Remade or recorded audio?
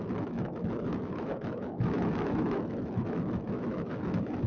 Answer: remade